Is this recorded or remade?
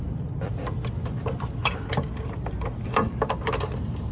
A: recorded